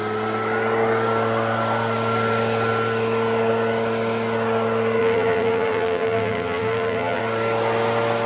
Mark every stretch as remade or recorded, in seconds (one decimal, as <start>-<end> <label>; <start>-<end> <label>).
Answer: 0.0-5.0 recorded; 5.0-7.2 remade; 7.2-8.3 recorded